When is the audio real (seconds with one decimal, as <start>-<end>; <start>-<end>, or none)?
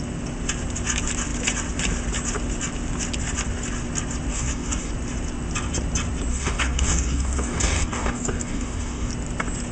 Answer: 0.0-4.3; 4.9-6.3; 9.1-9.7